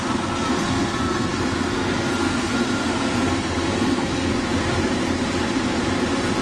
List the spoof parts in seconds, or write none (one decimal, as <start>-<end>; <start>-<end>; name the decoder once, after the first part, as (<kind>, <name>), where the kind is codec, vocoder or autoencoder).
0.5-4.3 (codec, SNAC)